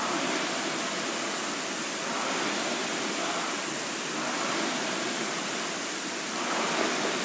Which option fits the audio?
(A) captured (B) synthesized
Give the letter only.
B